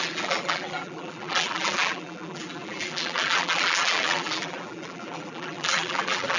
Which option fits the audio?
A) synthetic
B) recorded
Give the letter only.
A